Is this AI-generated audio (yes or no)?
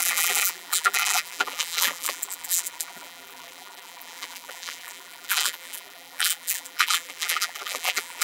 yes